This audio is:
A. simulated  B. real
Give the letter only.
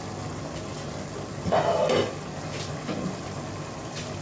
B